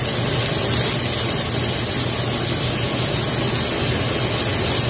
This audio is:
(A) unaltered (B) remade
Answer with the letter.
A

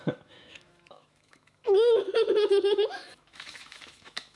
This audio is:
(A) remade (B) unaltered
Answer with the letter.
A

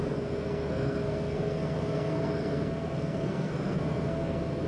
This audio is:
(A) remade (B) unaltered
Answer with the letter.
A